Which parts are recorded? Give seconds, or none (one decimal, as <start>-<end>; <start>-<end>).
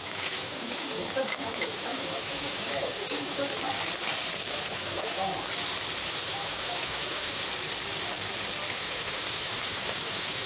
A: 3.4-4.5; 5.3-6.1; 7.4-8.7